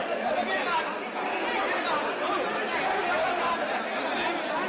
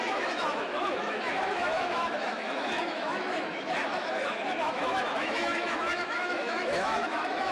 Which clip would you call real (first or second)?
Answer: first